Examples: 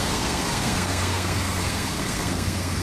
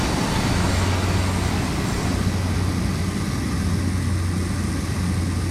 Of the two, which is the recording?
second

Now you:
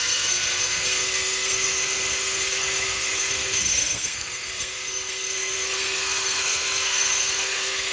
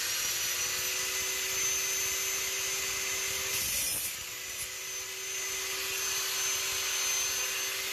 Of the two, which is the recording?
second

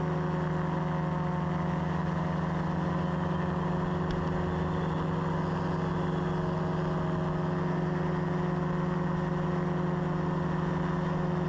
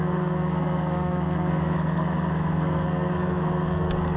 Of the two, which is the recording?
first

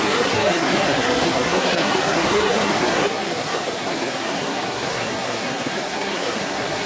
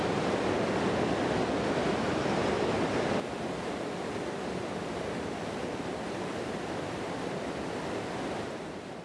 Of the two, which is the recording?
second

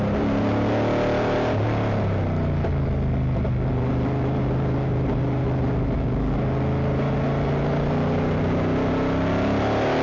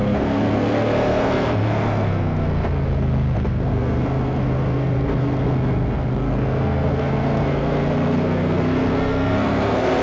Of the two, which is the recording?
first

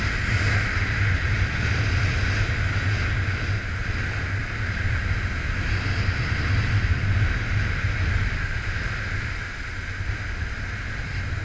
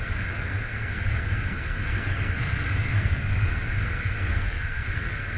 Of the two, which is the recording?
first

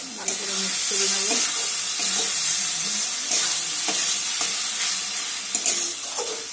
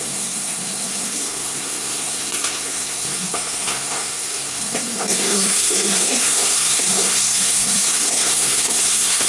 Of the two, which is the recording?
first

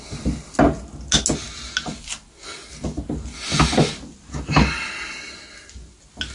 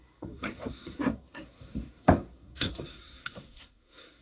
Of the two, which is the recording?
first